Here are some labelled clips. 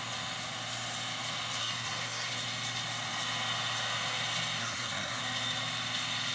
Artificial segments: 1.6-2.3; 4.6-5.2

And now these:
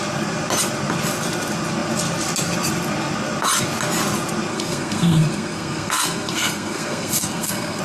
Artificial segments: 4.5-7.8

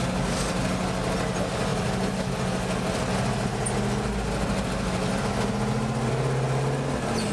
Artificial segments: none